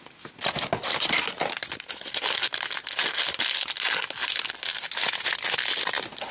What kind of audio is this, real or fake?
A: real